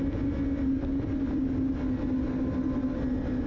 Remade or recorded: recorded